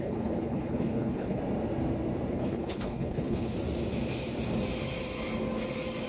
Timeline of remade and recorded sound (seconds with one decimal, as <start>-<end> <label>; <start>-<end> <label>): 0.0-1.4 remade; 1.4-2.3 recorded; 2.3-3.5 remade; 3.5-6.1 recorded